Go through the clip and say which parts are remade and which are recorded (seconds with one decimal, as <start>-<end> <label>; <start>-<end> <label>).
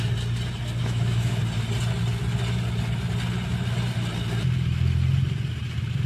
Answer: 0.0-0.8 recorded; 0.8-1.4 remade; 1.4-6.1 recorded